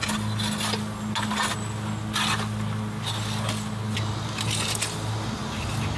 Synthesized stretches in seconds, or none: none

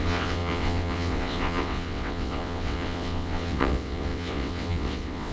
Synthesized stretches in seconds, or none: 0.0-5.3 (vocoder, WaveNeXt)

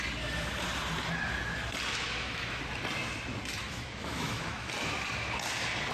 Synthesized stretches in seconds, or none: 1.9-2.6 (autoencoder, DAC-VAE); 3.6-4.7

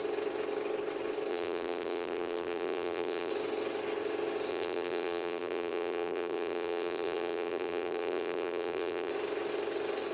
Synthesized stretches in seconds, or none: 1.3-3.3 (vocoder, BigVGAN v2); 4.5-9.1